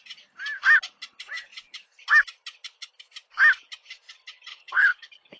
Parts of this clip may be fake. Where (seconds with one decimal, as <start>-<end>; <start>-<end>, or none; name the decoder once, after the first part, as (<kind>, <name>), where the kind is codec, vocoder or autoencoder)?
4.5-5.4 (codec, HILCodec)